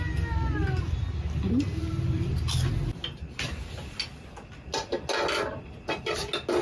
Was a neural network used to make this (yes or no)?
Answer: no